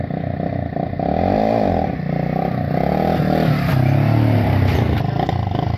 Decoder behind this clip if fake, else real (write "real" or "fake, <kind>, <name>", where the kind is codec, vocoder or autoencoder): real